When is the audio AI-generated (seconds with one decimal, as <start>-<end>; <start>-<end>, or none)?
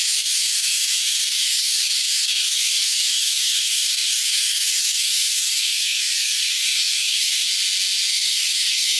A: 0.0-7.5; 8.1-9.0